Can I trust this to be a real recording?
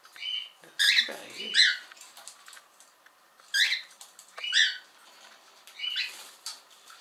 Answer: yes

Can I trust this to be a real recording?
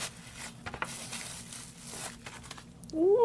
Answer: yes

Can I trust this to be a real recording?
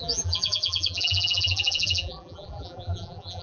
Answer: no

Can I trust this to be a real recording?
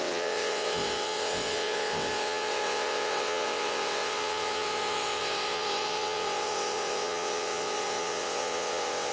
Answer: no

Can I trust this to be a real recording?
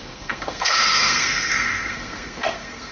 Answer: no